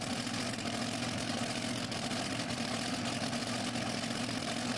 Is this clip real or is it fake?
real